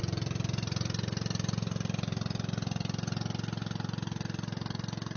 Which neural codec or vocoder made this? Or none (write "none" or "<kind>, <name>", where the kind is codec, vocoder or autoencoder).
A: none